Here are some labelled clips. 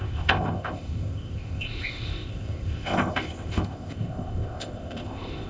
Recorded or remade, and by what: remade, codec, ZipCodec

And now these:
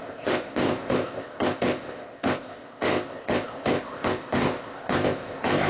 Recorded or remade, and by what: remade, codec, ZipCodec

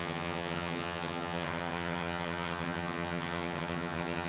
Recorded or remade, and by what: remade, vocoder, HiFi-GAN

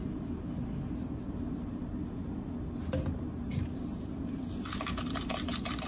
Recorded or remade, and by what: recorded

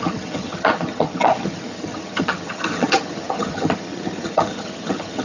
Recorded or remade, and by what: remade, vocoder, HiFi-GAN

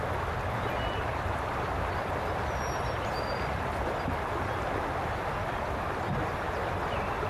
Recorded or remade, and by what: recorded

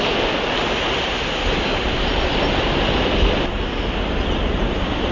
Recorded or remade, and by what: recorded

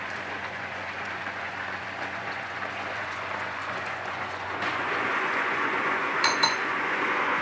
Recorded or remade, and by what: remade, vocoder, Vocos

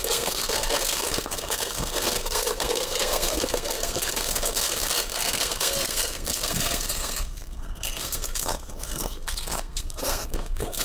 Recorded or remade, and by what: remade, codec, SNAC